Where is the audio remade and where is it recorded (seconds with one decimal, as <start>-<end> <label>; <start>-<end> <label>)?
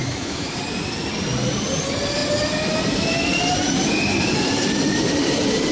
0.0-0.6 remade; 0.6-5.7 recorded